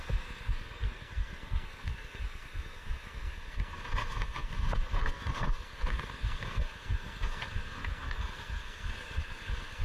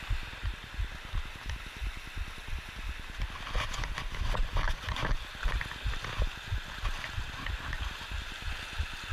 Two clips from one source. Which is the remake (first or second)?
first